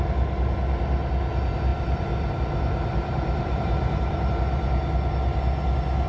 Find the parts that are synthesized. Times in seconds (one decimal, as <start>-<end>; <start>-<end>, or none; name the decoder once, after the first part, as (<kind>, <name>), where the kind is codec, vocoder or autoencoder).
1.7-4.3 (vocoder, BigVGAN v2)